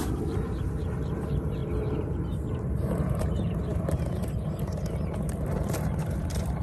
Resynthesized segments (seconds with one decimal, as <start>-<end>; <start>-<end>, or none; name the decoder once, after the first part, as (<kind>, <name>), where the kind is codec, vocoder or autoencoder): 0.0-1.6 (vocoder, BigVGAN v2); 2.5-6.6